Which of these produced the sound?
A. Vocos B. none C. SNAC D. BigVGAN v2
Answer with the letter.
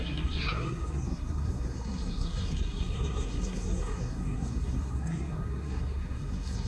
C